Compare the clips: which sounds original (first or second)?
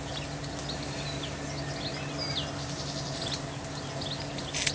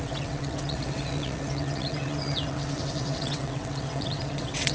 first